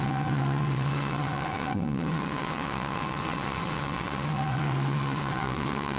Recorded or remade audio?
remade